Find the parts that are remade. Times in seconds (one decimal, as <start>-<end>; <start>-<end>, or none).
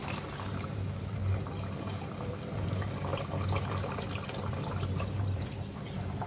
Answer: 0.0-1.2; 1.8-3.1; 4.4-6.3